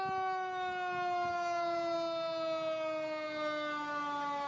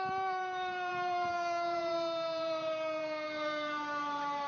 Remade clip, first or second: second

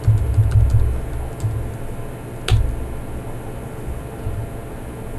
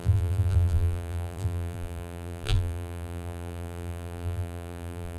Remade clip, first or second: second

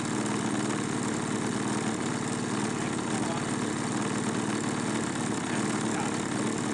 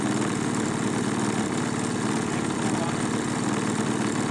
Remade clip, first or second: second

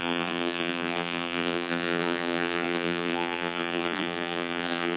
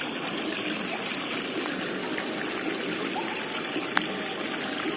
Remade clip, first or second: first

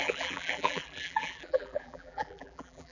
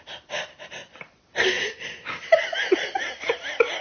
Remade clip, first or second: first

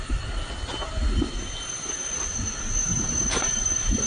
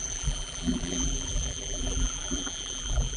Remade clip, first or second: second